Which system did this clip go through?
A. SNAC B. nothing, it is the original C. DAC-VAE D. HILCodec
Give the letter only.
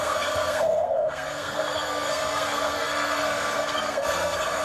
A